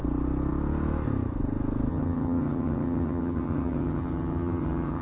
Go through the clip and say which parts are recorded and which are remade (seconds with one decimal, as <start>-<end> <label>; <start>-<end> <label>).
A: 0.0-1.9 recorded; 1.9-5.0 remade